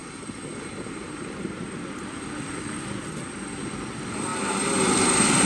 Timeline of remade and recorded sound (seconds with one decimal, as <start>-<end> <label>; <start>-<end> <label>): 0.0-5.5 recorded